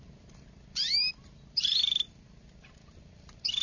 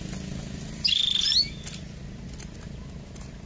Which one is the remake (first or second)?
first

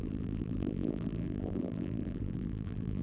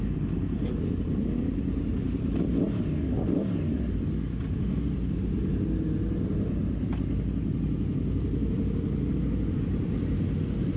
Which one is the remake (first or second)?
first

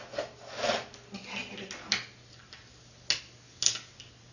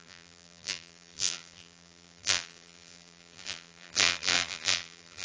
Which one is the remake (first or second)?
second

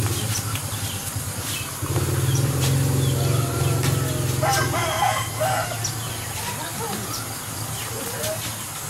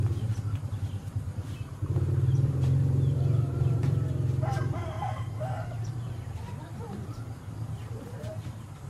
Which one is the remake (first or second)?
second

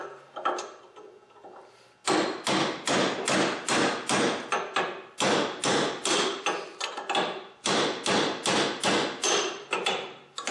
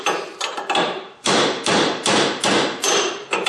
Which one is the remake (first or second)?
second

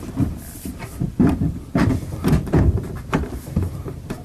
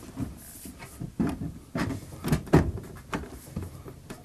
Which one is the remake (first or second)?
first